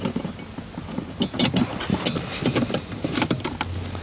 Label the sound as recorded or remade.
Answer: recorded